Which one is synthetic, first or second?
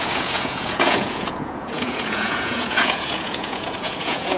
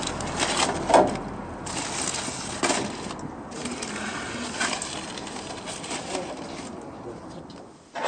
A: first